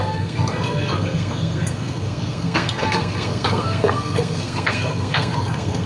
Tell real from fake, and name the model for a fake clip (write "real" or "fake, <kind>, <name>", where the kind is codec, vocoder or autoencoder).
fake, codec, SNAC